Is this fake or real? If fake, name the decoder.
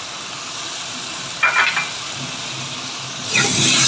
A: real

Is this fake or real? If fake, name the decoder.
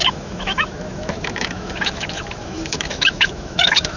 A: fake, autoencoder, DAC-VAE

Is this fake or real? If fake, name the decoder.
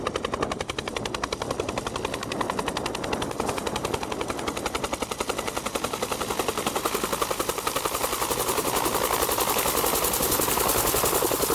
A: real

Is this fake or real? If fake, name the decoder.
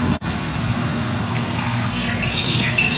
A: fake, codec, SNAC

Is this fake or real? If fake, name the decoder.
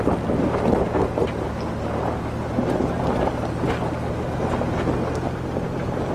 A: real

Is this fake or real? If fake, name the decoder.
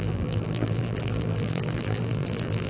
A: fake, vocoder, BigVGAN v2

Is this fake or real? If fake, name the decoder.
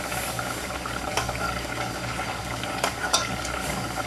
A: fake, codec, DAC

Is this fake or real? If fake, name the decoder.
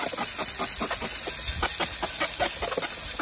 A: real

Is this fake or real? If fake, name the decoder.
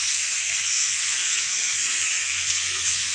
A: fake, codec, SNAC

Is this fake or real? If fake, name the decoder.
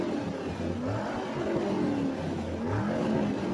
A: real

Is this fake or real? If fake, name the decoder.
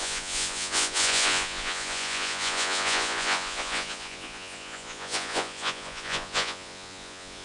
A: fake, vocoder, Vocos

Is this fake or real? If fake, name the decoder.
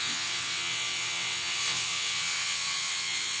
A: fake, vocoder, WaveNeXt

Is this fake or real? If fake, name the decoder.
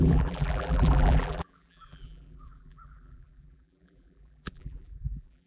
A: fake, vocoder, BigVGAN v2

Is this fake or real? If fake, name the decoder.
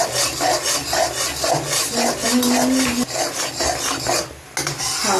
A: real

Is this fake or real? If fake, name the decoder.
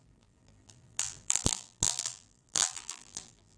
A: fake, vocoder, BigVGAN v2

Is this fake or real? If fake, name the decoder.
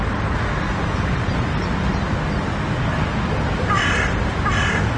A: real